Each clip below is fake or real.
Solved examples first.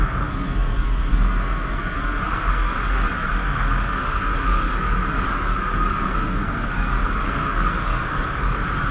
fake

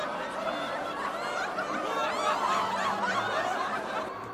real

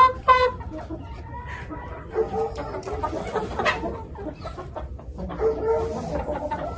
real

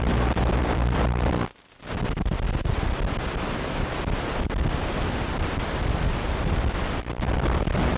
fake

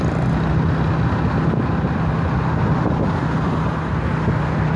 real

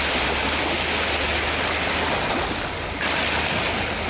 real